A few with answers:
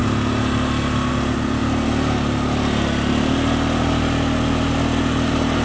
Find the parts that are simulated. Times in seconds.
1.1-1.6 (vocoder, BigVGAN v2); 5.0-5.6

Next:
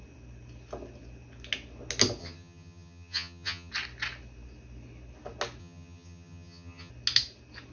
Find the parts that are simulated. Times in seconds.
2.2-3.7 (vocoder, HiFi-GAN); 5.6-6.9

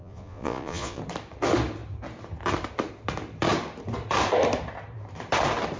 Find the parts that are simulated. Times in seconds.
0.0-1.0 (vocoder, Vocos)

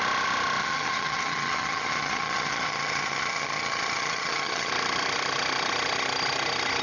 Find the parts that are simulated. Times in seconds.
0.6-4.7 (vocoder, HiFi-GAN)

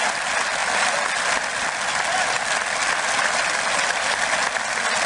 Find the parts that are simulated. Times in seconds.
none

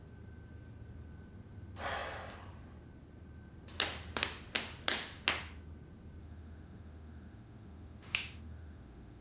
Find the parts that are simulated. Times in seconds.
6.2-9.2 (autoencoder, DAC-VAE)